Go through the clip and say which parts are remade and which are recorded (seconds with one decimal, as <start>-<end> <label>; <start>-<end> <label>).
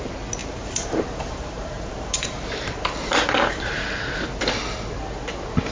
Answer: 0.0-0.4 recorded; 0.4-3.8 remade; 3.8-5.7 recorded